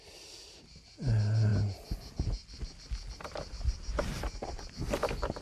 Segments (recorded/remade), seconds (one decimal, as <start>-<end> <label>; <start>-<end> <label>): 0.0-5.4 recorded